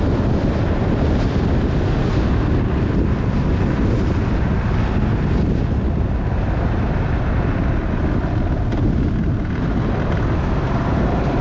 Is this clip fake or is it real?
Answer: real